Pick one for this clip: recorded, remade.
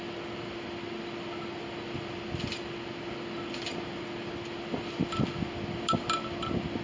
recorded